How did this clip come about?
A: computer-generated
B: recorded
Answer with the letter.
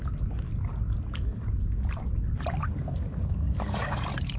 B